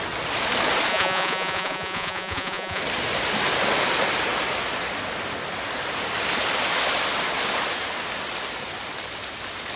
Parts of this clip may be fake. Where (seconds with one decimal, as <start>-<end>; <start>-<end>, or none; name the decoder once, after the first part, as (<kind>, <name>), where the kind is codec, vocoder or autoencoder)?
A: 0.9-2.8 (vocoder, Vocos)